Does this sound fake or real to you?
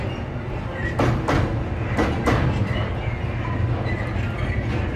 real